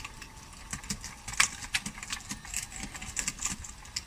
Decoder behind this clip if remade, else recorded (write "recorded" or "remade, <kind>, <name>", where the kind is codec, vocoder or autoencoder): recorded